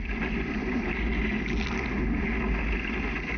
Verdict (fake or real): real